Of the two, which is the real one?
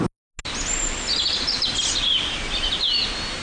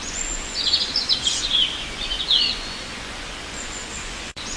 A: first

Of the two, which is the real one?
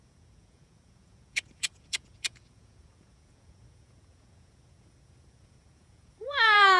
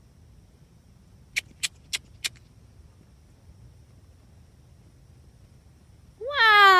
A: second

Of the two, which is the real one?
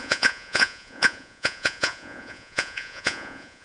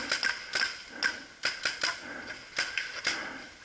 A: second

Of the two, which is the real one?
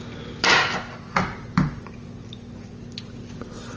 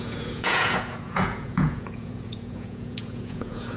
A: first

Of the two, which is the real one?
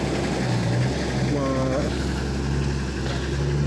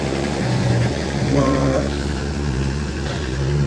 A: first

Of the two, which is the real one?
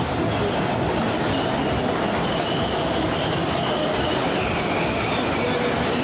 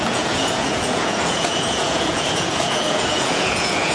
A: first